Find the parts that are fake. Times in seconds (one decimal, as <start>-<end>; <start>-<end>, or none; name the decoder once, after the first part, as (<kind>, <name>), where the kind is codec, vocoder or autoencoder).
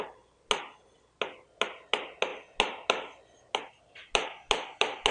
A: none